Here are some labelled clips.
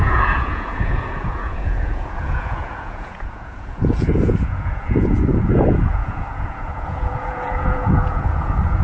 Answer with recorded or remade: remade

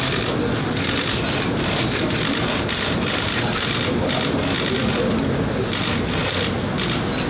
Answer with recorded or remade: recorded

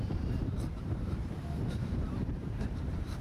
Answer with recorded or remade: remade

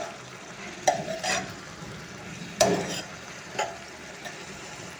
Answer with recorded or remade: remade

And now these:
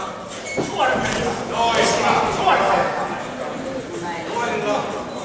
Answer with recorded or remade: recorded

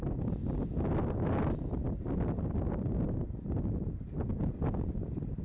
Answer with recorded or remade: recorded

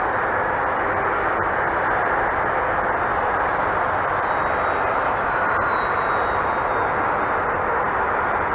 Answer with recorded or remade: recorded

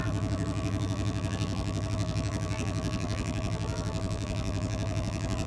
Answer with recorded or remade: remade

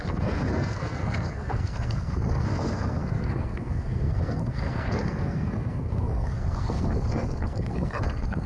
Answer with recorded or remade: remade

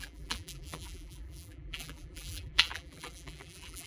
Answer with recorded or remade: remade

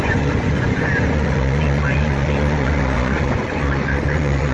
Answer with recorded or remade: remade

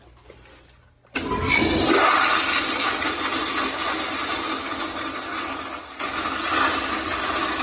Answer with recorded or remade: recorded